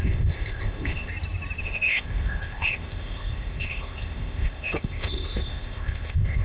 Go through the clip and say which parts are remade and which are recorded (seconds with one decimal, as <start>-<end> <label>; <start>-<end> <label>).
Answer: 0.0-1.1 remade; 1.1-1.6 recorded; 1.6-6.4 remade